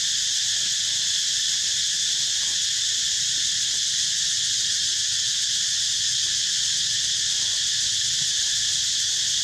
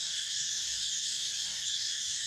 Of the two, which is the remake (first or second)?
second